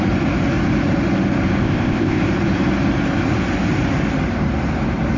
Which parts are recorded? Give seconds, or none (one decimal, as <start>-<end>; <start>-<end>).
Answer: 0.0-1.6; 2.2-5.2